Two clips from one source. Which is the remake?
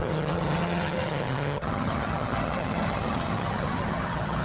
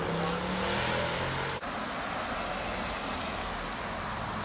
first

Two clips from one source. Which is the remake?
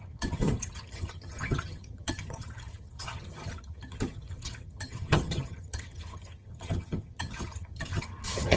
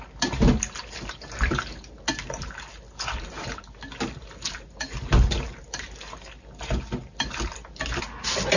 first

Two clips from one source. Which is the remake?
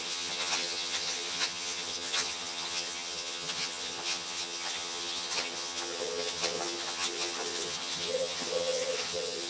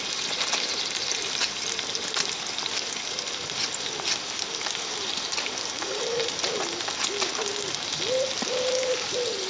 first